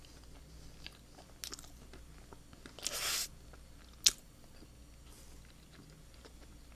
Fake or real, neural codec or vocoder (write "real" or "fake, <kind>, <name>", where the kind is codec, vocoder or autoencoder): real